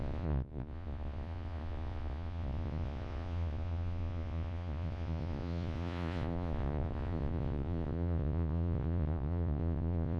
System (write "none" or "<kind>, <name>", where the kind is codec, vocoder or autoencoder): vocoder, Vocos